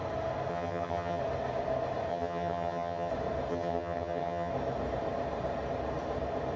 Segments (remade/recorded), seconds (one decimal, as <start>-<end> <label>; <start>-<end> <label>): 0.0-0.5 recorded; 0.5-1.2 remade; 1.2-2.1 recorded; 2.1-3.1 remade; 3.1-3.5 recorded; 3.5-4.5 remade; 4.5-6.6 recorded